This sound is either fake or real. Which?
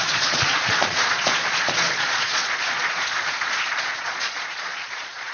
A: fake